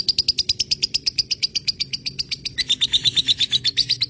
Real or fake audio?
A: real